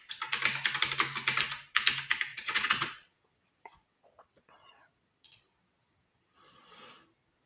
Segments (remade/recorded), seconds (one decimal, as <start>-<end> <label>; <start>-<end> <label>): 0.0-2.3 recorded; 2.3-6.8 remade; 6.8-7.5 recorded